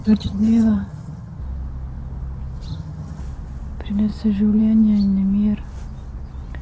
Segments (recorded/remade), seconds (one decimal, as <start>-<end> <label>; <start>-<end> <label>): 0.0-1.4 remade; 1.4-2.7 recorded; 2.7-3.2 remade; 3.2-6.6 recorded